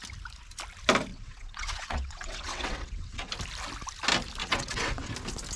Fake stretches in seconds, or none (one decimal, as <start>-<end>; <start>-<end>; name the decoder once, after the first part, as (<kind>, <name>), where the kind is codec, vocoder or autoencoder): 1.1-3.3 (vocoder, WaveNeXt); 4.4-5.1